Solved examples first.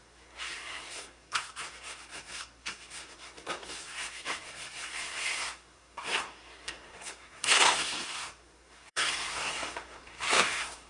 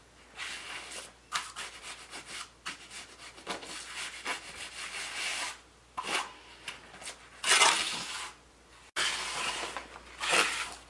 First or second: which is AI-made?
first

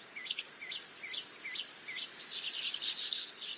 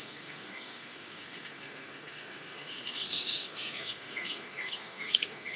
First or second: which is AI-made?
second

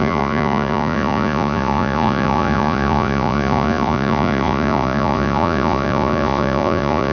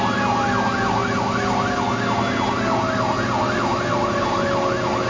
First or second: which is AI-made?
first